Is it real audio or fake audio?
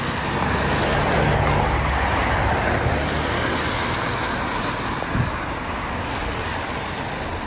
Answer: real